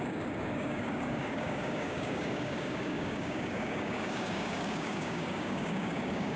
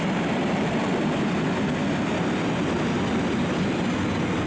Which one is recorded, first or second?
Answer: second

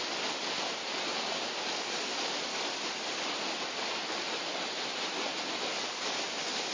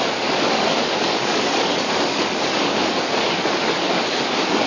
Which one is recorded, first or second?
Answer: first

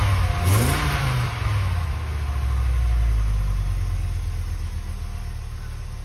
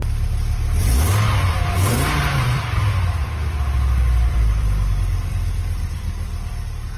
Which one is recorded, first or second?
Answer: first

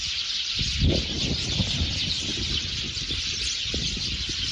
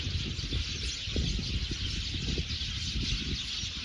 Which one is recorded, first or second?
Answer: second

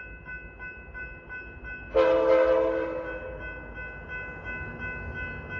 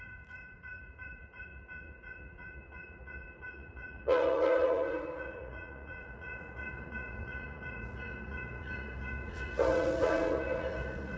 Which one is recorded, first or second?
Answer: first